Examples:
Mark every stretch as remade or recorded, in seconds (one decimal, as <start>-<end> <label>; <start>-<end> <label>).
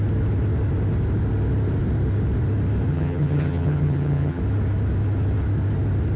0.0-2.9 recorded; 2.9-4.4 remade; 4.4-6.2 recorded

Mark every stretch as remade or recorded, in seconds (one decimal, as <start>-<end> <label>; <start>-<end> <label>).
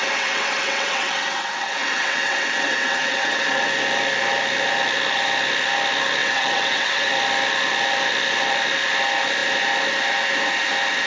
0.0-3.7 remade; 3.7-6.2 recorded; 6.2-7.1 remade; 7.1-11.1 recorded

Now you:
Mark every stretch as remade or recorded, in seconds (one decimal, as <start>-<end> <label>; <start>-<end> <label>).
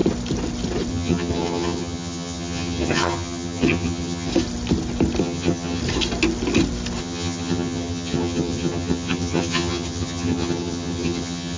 0.0-0.9 recorded; 0.9-4.3 remade; 4.3-5.2 recorded; 5.2-5.8 remade; 5.8-7.0 recorded; 7.0-11.6 remade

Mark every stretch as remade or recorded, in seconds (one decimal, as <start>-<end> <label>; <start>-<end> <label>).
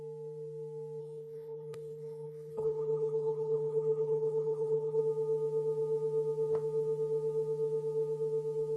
0.0-1.0 recorded; 1.0-5.0 remade; 5.0-8.8 recorded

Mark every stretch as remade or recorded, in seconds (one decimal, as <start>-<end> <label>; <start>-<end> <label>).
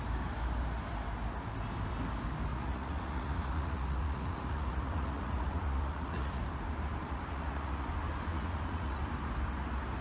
0.0-2.5 recorded; 2.5-6.4 remade; 6.4-7.0 recorded; 7.0-7.9 remade; 7.9-8.3 recorded; 8.3-9.0 remade; 9.0-10.0 recorded